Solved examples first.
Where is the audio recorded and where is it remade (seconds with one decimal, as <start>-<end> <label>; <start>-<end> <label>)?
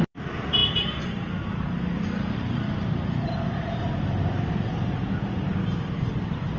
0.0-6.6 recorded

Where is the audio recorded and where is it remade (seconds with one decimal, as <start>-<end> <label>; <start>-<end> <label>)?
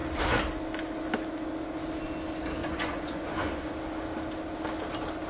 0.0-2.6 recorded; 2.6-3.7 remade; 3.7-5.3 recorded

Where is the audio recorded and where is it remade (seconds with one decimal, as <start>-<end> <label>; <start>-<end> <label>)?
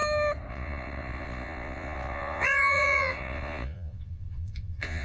0.0-0.5 recorded; 0.5-5.0 remade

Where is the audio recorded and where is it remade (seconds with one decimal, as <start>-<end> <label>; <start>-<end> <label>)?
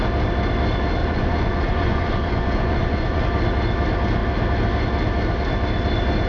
0.0-1.0 recorded; 1.0-3.2 remade; 3.2-6.3 recorded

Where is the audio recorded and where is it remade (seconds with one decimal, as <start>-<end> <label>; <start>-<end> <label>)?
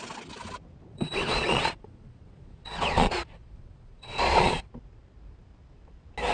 0.0-0.9 recorded; 0.9-4.7 remade; 4.7-6.3 recorded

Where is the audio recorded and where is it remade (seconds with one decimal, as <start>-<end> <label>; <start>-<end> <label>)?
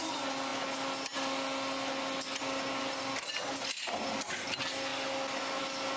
0.0-6.0 recorded